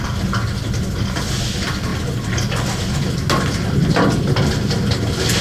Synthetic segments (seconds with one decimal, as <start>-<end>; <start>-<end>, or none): none